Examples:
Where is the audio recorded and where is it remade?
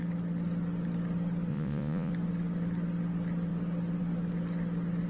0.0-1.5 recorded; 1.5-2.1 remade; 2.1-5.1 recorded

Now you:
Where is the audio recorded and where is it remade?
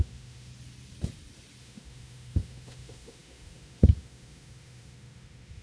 0.0-0.5 remade; 0.5-1.6 recorded; 1.6-5.6 remade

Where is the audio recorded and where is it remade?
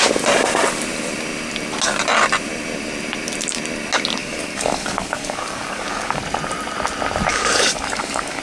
0.0-4.2 recorded; 4.2-6.2 remade; 6.2-7.3 recorded; 7.3-8.4 remade